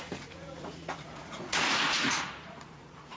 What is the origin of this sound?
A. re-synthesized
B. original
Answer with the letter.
A